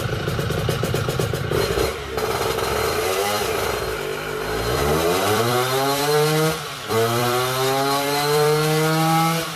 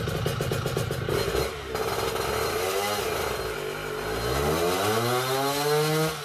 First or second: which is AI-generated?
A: first